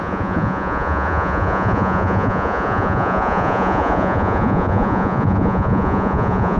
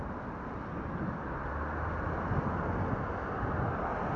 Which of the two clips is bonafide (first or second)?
second